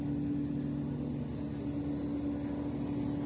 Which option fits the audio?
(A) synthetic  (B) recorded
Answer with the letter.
B